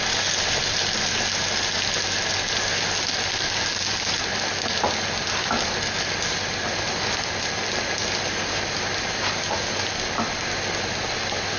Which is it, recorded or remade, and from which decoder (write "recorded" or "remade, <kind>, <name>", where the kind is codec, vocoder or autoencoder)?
recorded